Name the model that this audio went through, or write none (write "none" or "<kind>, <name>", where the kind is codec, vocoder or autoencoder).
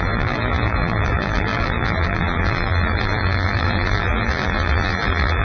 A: vocoder, BigVGAN v2